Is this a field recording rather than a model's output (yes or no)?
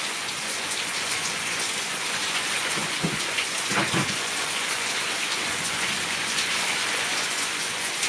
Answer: no